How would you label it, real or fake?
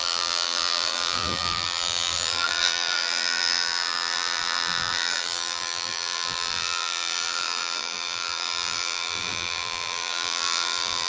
fake